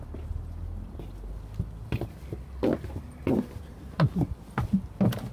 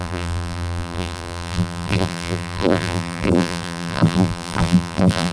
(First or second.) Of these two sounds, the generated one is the second